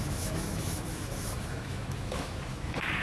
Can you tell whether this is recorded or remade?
remade